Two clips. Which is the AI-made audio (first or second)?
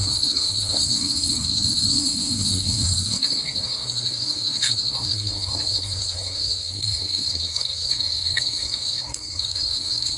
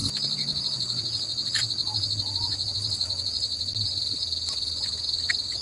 first